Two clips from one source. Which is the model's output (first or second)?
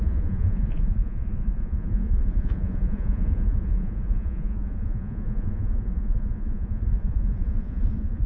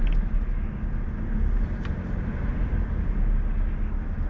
first